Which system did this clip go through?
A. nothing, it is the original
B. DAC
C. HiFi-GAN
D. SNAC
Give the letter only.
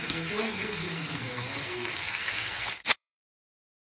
D